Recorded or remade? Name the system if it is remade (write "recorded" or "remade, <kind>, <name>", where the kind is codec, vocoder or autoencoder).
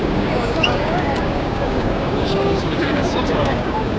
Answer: remade, codec, DAC